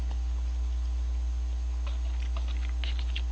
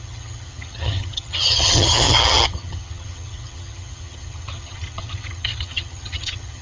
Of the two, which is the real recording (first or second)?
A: first